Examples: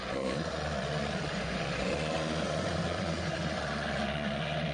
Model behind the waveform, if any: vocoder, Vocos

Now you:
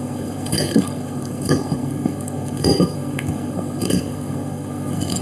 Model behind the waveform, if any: codec, SNAC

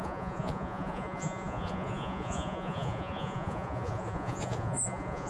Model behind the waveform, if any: vocoder, Vocos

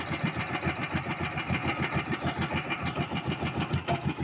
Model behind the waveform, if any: none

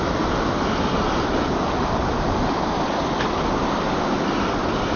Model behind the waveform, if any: none